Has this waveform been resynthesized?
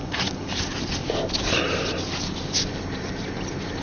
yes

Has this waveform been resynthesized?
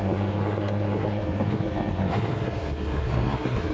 yes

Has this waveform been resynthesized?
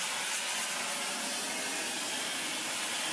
no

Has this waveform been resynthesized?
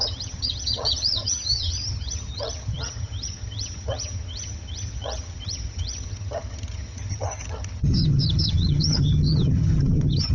yes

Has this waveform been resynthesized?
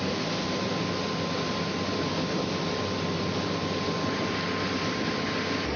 no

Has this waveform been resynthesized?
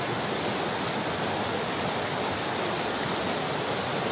no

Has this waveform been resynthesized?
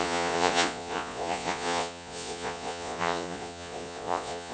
yes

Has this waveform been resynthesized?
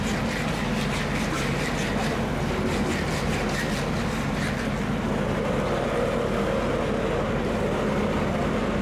no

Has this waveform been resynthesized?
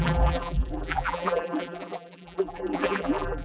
yes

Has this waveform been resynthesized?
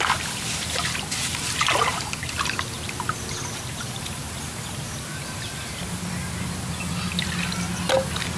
no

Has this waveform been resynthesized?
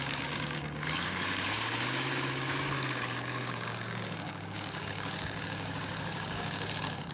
yes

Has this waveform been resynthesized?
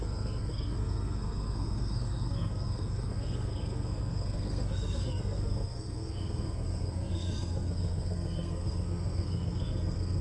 yes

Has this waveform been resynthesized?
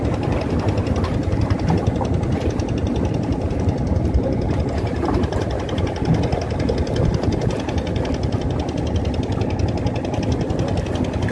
no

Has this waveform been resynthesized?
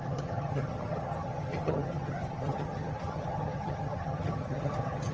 yes